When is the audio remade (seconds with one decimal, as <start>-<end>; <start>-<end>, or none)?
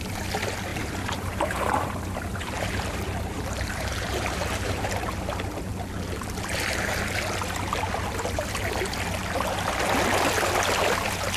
0.7-5.2